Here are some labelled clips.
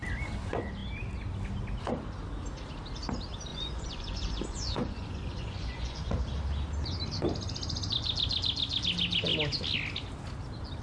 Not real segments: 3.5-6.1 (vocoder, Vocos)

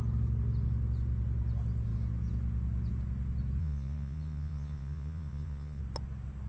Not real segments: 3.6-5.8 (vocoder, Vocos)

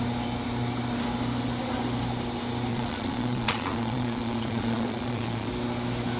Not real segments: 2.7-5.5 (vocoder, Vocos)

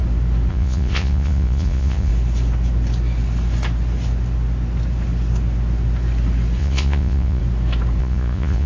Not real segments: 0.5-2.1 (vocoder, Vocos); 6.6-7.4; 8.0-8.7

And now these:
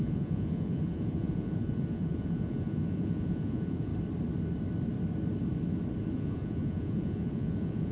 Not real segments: 0.0-3.9 (vocoder, Vocos); 6.1-7.9

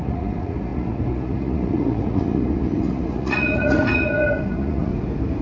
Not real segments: 0.0-4.9 (vocoder, Vocos)

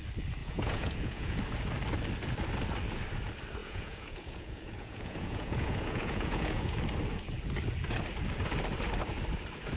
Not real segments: 0.4-1.4 (vocoder, Vocos); 3.6-6.8